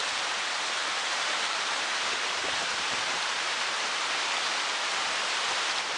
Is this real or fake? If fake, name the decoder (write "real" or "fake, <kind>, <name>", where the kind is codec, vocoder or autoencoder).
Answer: fake, vocoder, BigVGAN v2